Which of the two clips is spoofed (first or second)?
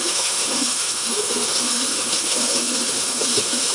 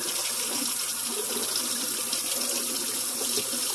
first